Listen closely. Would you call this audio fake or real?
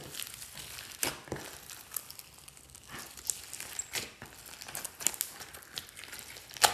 real